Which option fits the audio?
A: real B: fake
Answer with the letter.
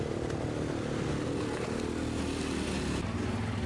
A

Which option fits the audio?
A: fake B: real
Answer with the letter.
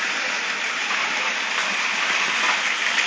B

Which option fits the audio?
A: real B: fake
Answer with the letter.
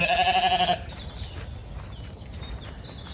A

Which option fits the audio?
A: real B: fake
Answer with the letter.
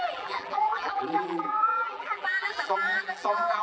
B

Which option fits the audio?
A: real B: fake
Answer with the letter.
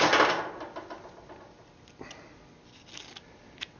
A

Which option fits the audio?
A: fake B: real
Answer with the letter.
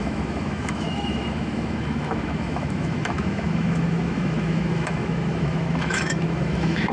A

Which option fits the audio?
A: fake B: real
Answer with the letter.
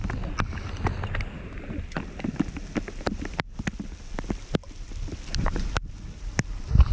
B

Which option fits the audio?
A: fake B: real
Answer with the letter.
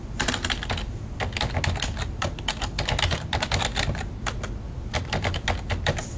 B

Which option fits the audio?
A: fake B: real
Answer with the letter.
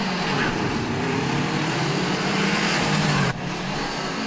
A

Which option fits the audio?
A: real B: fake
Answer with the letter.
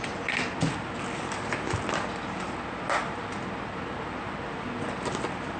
A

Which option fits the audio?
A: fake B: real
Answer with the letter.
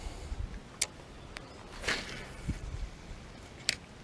B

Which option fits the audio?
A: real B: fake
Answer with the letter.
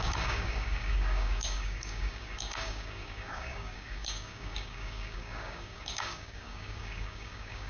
B